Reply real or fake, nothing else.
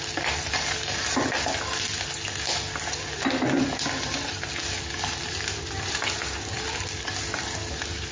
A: real